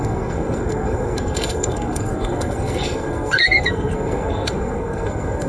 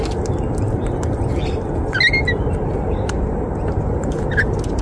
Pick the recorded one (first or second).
second